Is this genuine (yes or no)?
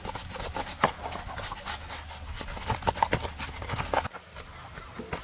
yes